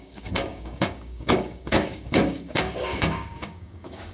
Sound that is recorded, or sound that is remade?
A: remade